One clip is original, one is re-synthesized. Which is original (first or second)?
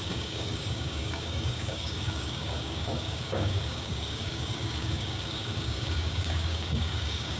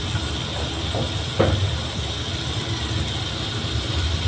second